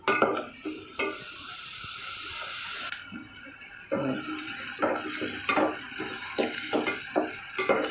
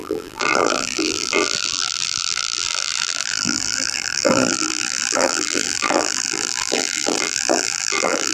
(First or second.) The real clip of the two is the first